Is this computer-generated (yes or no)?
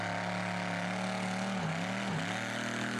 no